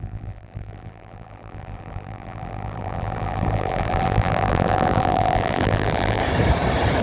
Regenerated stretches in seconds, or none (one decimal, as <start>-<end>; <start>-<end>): 0.0-6.2